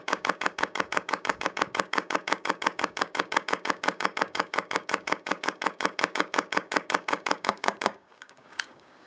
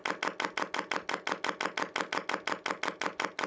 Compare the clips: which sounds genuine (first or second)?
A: second